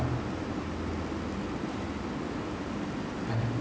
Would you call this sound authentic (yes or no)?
yes